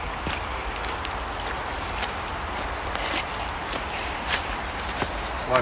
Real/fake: real